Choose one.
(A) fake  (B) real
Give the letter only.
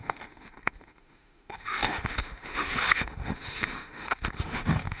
A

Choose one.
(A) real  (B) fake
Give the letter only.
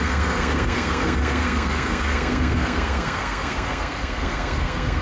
B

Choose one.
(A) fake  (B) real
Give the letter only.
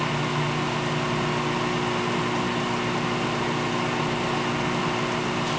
B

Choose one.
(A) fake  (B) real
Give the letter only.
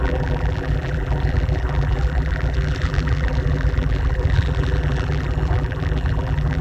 A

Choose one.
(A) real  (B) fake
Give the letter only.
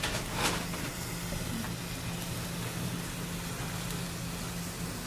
A